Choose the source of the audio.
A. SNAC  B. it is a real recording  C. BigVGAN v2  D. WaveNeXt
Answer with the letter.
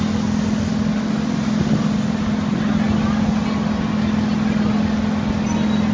B